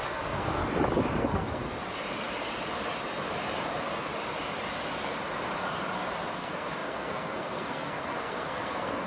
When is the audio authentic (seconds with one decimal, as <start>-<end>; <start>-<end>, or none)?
0.6-1.2; 1.6-6.3